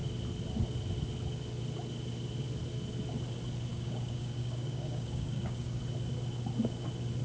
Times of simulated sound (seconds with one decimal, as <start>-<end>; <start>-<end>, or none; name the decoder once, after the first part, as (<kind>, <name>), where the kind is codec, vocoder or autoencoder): 3.7-5.8 (codec, DAC)